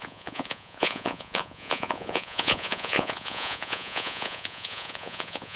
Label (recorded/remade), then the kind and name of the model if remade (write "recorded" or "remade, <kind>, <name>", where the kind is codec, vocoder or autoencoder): remade, vocoder, Vocos